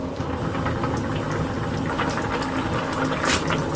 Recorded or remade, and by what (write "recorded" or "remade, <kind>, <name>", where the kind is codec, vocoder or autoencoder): recorded